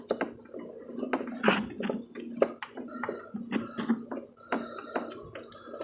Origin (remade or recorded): recorded